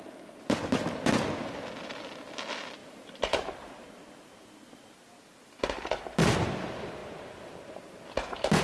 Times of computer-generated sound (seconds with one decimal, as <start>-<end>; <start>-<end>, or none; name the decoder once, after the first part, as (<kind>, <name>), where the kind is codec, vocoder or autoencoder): 2.8-3.5 (vocoder, BigVGAN v2)

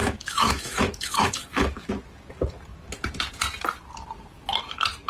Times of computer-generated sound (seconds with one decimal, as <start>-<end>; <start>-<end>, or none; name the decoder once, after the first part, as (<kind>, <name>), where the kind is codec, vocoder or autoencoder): 0.0-1.9 (autoencoder, DAC-VAE)

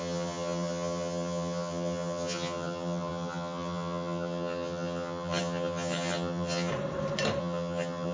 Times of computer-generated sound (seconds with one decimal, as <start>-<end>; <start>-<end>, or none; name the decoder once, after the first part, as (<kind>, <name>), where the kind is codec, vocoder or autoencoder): 0.0-6.7 (vocoder, HiFi-GAN); 7.4-8.1